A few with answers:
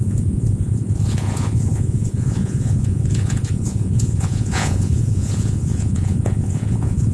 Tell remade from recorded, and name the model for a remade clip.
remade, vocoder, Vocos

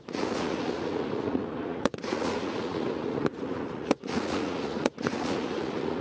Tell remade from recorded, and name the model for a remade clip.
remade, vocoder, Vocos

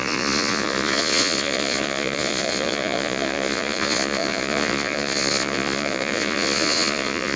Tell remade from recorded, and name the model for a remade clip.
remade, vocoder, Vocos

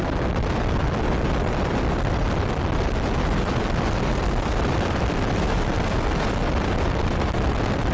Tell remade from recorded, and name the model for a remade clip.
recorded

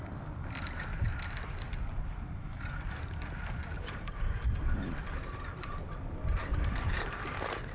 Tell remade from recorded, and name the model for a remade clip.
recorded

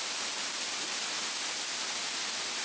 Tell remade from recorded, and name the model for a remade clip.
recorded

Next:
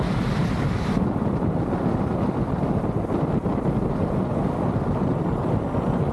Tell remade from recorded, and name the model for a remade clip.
recorded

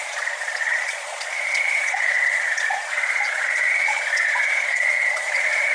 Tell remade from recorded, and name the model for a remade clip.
remade, vocoder, Vocos